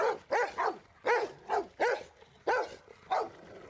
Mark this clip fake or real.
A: real